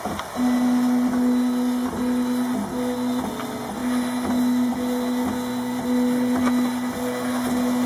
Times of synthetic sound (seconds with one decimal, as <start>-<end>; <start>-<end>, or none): none